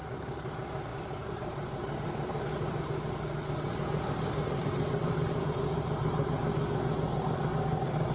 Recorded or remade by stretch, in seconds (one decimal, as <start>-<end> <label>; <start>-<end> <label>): 0.0-0.5 remade; 0.5-0.9 recorded; 0.9-2.4 remade; 2.4-3.7 recorded; 3.7-6.4 remade; 6.4-8.1 recorded